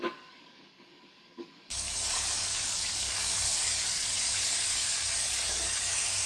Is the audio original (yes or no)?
no